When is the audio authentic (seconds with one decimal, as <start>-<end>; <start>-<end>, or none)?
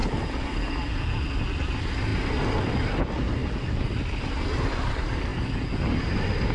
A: 0.0-6.5